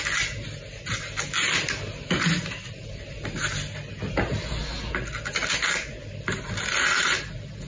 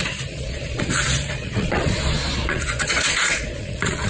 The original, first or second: first